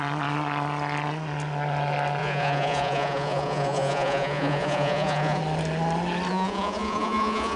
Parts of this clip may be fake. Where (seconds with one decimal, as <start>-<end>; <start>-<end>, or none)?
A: 2.2-5.4; 6.3-7.6